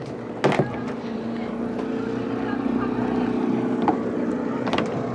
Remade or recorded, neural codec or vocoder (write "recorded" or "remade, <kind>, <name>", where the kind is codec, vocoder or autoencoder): recorded